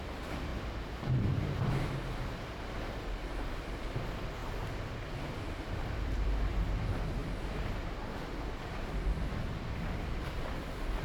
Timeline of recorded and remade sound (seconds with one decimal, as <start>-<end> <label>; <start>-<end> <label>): 0.0-0.5 remade; 0.5-2.5 recorded; 2.5-4.4 remade; 4.4-5.4 recorded; 5.4-7.2 remade; 7.2-9.4 recorded; 9.4-11.0 remade

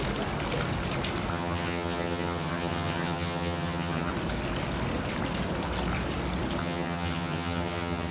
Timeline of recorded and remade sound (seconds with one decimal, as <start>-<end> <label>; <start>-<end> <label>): 0.0-1.3 recorded; 1.3-4.1 remade; 4.1-6.6 recorded; 6.6-8.1 remade